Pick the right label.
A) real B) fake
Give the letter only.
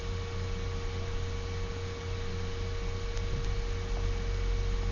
A